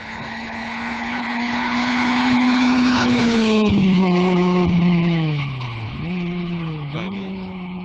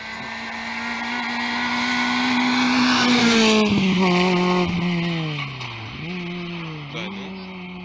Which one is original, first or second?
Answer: second